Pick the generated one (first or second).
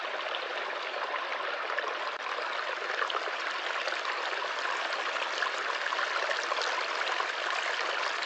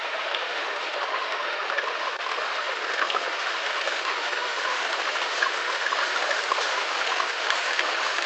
second